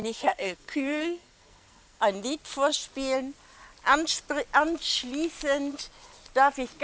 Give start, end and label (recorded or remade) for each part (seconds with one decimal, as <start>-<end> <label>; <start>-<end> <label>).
0.0-2.0 remade; 2.0-6.8 recorded